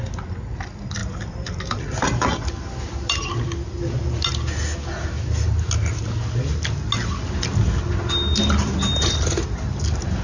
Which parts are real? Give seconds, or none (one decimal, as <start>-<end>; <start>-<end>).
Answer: 0.0-10.2